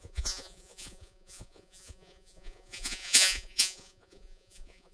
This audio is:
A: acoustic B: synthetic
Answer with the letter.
B